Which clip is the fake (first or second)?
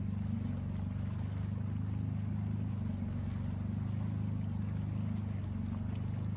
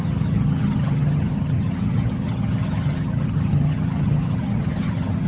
second